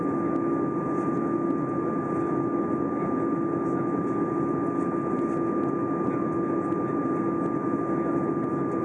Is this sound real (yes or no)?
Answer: yes